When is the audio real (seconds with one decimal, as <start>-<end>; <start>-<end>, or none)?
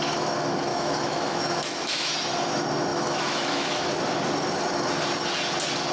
0.0-0.7; 2.1-2.9; 3.9-5.9